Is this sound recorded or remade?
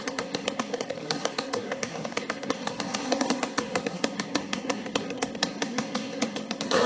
remade